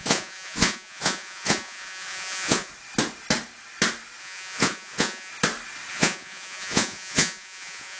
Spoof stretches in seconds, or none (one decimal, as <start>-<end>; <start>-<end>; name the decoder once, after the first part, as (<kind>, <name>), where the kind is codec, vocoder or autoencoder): 0.0-2.7 (vocoder, Vocos); 4.2-5.3; 5.9-8.0